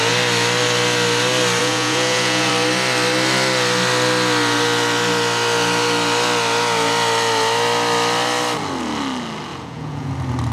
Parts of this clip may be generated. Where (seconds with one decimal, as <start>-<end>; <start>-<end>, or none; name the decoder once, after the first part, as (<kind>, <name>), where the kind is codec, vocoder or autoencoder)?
1.6-2.5 (vocoder, Vocos); 9.5-10.1